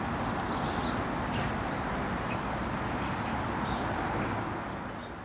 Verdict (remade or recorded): recorded